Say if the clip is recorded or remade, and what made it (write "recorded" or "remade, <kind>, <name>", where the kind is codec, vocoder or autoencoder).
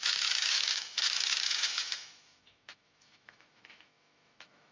remade, autoencoder, DAC-VAE